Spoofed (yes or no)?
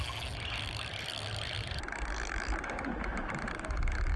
no